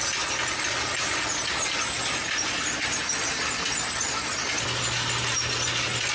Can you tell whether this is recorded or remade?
recorded